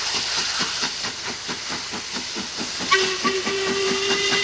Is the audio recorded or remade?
recorded